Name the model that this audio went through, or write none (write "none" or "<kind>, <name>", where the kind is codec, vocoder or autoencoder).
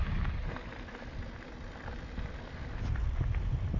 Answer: none